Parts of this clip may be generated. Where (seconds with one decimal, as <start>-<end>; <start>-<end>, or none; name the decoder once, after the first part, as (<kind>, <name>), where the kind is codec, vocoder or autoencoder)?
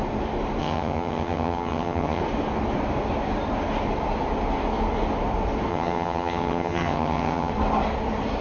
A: 0.6-2.2 (vocoder, HiFi-GAN); 5.7-7.5